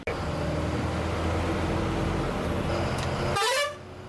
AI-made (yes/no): no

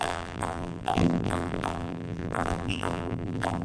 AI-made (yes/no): yes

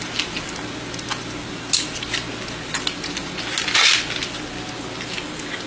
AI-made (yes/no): no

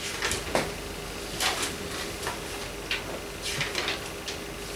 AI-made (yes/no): no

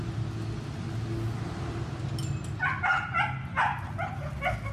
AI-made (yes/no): no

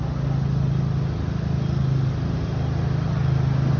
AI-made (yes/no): no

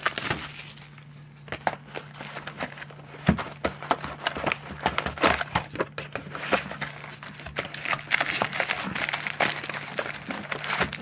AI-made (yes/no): no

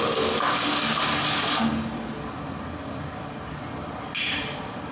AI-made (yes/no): no